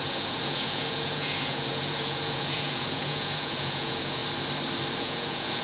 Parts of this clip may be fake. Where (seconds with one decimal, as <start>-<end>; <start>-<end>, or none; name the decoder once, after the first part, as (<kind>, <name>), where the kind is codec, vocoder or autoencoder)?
0.0-4.2 (vocoder, Vocos); 5.0-5.6